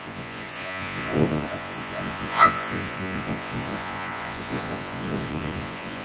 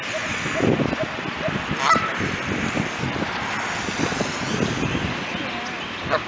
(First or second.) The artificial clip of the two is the first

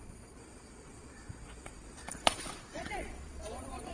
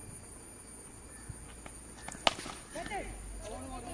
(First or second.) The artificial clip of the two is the first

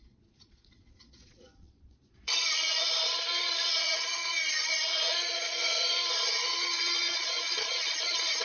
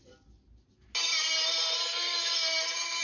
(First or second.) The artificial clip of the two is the first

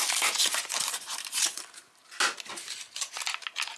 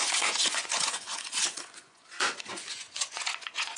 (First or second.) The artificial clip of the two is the second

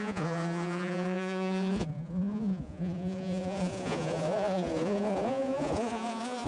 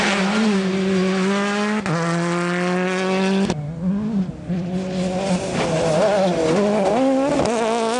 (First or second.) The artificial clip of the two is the first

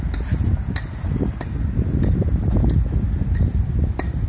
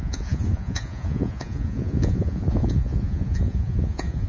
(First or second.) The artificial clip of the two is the second